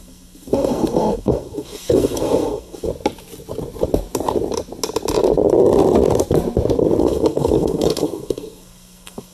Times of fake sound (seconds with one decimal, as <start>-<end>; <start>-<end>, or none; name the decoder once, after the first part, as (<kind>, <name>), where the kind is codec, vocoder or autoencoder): 0.0-2.9 (codec, SNAC); 7.0-9.3